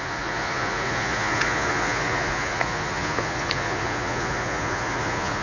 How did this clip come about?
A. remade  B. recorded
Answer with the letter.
A